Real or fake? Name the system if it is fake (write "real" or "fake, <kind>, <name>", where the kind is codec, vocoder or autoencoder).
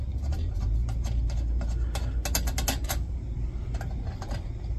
real